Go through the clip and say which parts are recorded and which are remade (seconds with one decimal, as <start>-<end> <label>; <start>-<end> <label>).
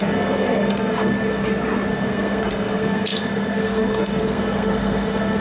0.0-1.4 remade; 1.4-1.9 recorded; 1.9-5.4 remade